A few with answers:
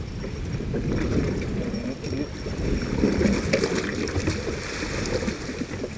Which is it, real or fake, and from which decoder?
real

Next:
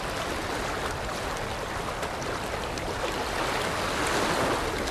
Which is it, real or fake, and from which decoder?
real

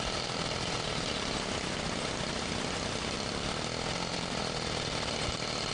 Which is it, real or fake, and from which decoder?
real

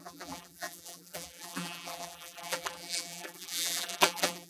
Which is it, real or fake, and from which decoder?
fake, vocoder, BigVGAN v2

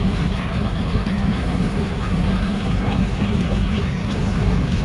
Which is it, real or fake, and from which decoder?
fake, codec, SNAC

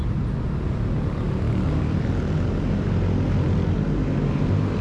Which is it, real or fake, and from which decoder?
real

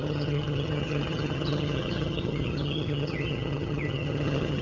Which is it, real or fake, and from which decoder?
fake, vocoder, HiFi-GAN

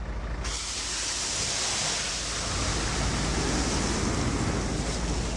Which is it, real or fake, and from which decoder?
real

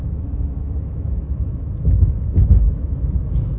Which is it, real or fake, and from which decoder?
fake, autoencoder, DAC-VAE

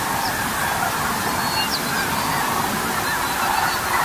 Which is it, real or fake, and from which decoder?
real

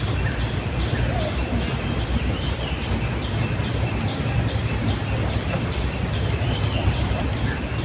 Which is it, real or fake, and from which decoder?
real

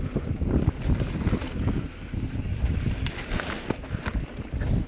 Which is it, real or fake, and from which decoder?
real